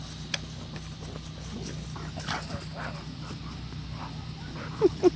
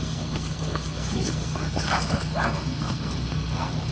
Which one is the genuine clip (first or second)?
first